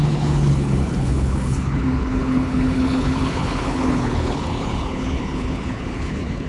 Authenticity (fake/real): fake